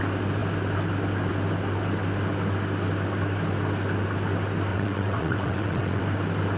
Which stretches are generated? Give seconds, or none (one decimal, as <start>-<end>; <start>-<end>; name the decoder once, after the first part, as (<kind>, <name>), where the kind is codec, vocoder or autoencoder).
4.7-6.0 (vocoder, WaveNeXt)